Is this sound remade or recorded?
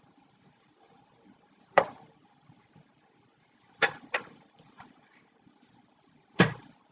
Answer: remade